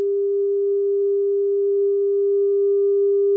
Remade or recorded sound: remade